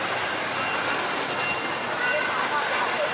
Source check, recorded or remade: recorded